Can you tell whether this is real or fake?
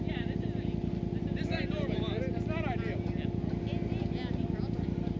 real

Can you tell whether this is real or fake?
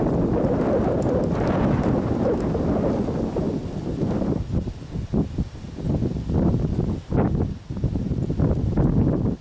real